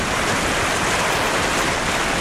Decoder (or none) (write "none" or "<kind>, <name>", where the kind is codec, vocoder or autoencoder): none